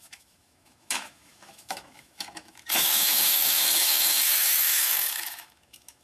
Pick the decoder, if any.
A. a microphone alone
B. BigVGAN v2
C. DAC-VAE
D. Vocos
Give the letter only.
C